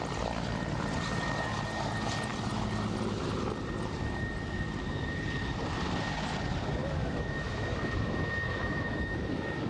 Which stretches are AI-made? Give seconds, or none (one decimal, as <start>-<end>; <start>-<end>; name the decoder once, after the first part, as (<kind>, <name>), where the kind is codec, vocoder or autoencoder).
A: 6.8-9.7 (autoencoder, DAC-VAE)